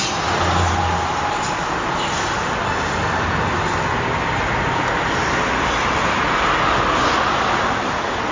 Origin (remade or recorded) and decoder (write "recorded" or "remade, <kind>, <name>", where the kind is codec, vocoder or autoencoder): recorded